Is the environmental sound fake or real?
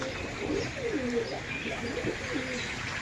real